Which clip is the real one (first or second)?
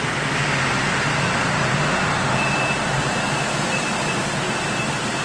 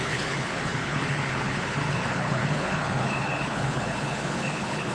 first